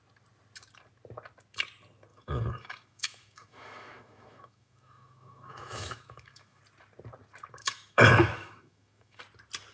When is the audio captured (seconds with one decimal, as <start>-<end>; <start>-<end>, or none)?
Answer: 0.0-2.1; 6.6-7.6; 9.2-9.7